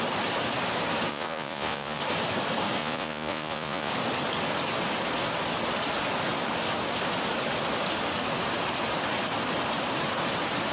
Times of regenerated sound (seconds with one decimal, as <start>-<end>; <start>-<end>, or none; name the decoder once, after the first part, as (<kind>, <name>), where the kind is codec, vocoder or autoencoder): 1.1-2.0 (vocoder, Vocos); 2.8-3.9